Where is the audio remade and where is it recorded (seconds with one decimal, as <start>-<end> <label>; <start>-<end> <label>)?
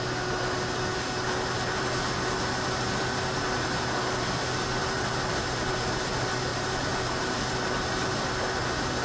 0.0-4.8 recorded; 4.8-5.7 remade; 5.7-6.5 recorded; 6.5-7.4 remade; 7.4-9.0 recorded